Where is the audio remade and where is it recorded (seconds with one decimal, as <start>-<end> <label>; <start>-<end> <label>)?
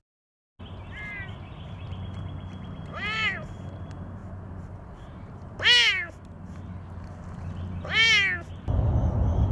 0.0-9.5 recorded